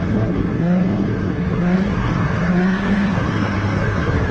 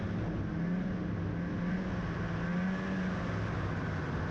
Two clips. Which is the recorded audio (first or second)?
second